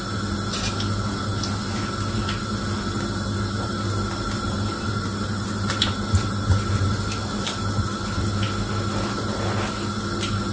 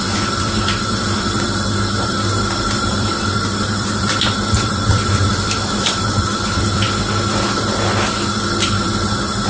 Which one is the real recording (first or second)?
first